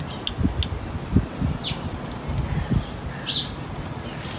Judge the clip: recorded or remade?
recorded